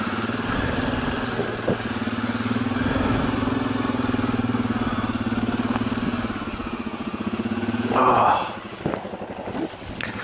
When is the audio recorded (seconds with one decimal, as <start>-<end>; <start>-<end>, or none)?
0.0-6.6; 8.8-10.2